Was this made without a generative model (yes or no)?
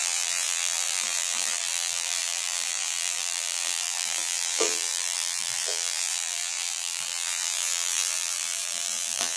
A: no